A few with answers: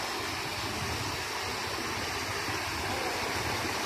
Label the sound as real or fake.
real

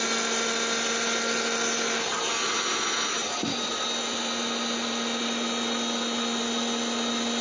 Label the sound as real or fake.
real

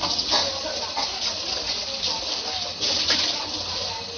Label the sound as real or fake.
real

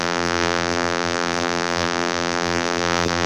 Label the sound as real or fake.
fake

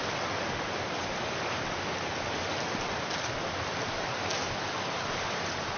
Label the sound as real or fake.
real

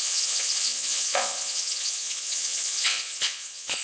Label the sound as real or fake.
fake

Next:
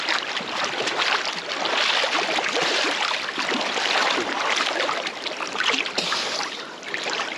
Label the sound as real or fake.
real